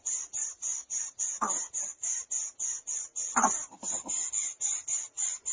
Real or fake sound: real